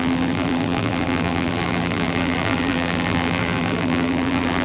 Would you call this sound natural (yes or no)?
no